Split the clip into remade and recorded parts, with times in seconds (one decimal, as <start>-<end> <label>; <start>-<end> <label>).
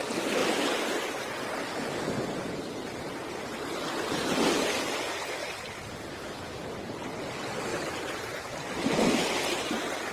0.0-0.4 recorded; 0.4-4.8 remade; 4.8-7.7 recorded; 7.7-9.2 remade; 9.2-10.1 recorded